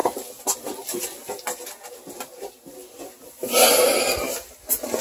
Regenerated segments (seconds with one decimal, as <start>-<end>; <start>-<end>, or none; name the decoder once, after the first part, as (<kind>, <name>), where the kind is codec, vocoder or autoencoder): none